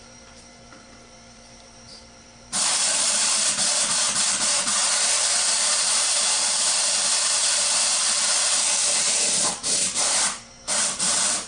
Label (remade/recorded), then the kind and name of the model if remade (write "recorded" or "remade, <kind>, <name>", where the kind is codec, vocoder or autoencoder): remade, vocoder, BigVGAN v2